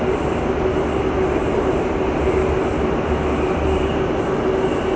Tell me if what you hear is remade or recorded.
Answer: recorded